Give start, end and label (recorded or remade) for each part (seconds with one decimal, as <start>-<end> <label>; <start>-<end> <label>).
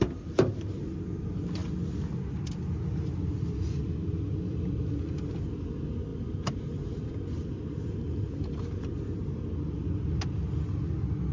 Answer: 0.0-6.1 recorded; 6.1-7.1 remade; 7.1-11.3 recorded